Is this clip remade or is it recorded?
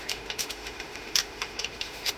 remade